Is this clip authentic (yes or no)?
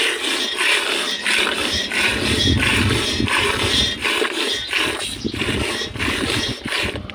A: yes